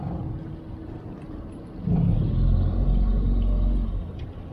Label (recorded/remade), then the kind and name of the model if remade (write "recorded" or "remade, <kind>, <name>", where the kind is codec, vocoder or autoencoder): recorded